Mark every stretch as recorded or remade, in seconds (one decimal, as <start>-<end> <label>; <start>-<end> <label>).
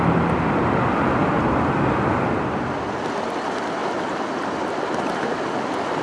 0.0-6.0 recorded